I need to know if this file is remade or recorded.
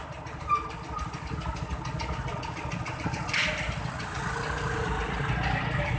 recorded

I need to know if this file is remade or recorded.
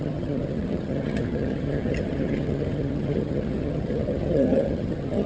remade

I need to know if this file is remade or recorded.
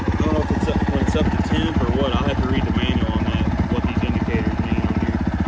recorded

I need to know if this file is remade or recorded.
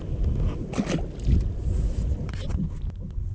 recorded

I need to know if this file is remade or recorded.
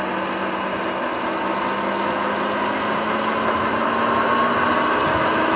recorded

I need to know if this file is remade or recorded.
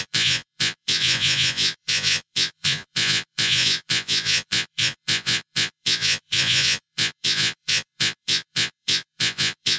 remade